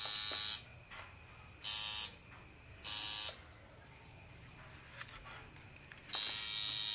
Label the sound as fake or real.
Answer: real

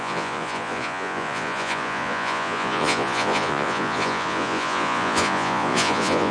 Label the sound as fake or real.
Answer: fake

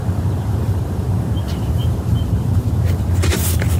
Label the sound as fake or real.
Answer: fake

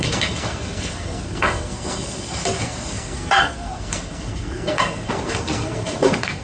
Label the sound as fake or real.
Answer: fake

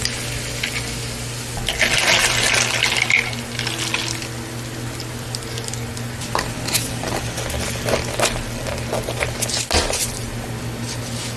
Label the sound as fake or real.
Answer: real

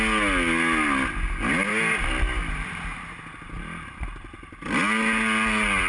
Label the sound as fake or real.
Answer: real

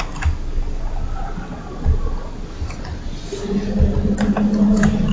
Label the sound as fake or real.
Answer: real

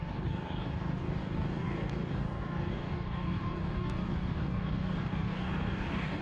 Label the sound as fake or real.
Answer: fake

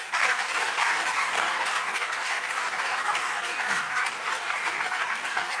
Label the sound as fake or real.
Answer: fake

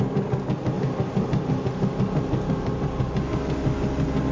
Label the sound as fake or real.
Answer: real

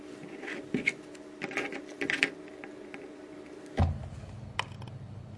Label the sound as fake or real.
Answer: real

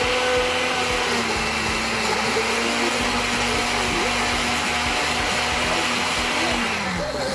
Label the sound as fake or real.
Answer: real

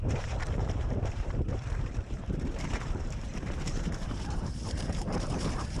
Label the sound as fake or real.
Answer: fake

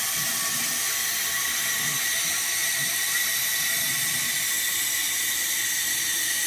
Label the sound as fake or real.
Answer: real